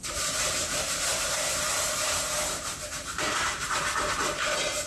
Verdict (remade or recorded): remade